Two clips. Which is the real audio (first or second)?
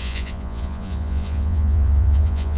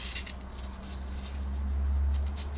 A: second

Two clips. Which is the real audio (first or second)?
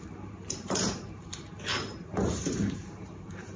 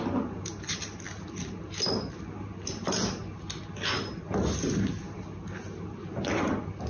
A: second